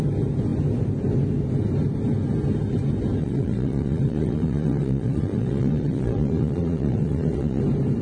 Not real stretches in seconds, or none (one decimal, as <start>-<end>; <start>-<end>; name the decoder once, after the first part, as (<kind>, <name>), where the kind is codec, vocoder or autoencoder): 3.2-7.6 (vocoder, Vocos)